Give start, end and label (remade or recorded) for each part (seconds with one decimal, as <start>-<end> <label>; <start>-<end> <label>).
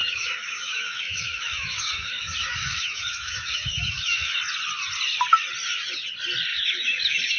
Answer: 0.0-4.4 remade; 4.4-6.5 recorded; 6.5-7.4 remade